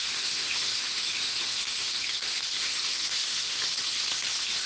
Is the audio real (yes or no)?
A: no